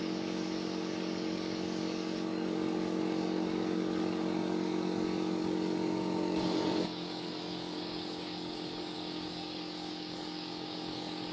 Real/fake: fake